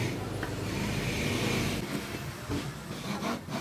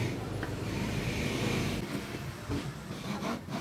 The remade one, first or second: second